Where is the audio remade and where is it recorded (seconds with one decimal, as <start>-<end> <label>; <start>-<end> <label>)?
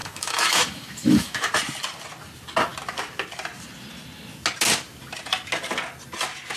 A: 0.0-1.5 remade; 1.5-6.6 recorded